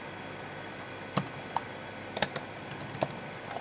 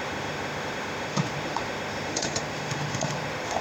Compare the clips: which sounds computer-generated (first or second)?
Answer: second